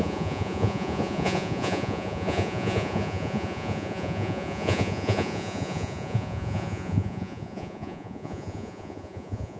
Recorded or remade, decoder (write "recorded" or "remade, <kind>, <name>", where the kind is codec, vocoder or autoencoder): remade, vocoder, Vocos